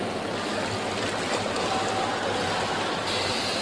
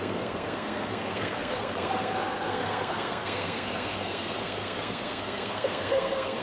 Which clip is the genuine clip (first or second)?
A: first